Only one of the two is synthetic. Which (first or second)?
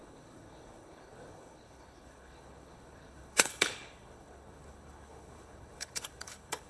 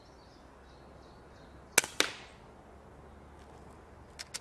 first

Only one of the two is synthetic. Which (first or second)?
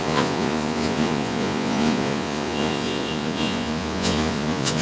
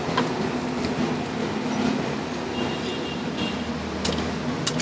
first